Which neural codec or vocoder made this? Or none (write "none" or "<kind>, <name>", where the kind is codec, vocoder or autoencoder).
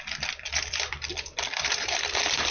vocoder, BigVGAN v2